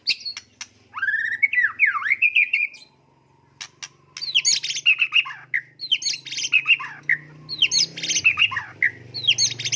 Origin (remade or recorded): recorded